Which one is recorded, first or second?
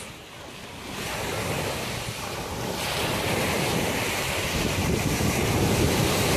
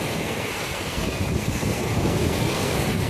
first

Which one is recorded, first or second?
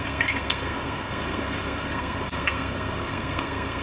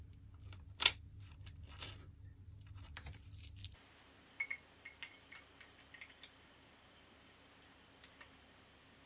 second